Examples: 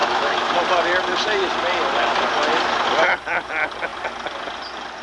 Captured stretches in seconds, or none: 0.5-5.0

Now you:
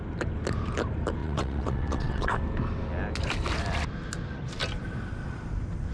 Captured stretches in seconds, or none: 0.0-1.2; 2.3-5.9

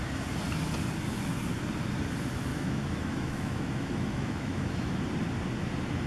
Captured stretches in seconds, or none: 0.0-2.5; 4.9-6.1

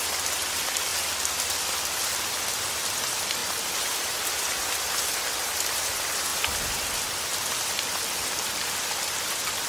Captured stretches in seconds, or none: 0.0-0.9; 2.5-6.3; 8.5-9.7

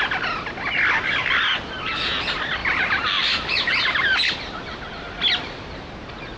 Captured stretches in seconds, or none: 0.0-2.6; 3.7-6.4

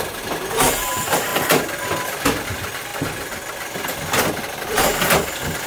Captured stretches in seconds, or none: 2.9-4.4; 4.9-5.7

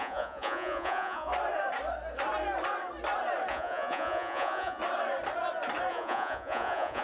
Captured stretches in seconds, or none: 1.3-3.5; 4.8-5.9

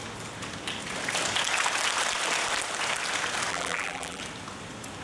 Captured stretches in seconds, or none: 0.0-3.5; 4.2-5.0